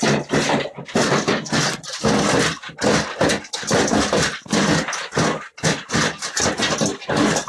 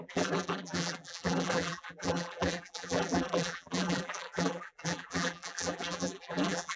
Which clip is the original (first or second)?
first